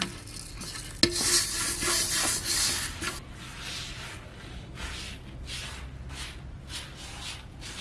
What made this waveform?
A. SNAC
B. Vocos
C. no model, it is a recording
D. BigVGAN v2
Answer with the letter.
C